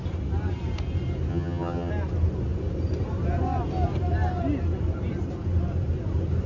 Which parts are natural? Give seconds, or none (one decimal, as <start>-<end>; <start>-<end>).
0.0-1.3; 1.9-6.5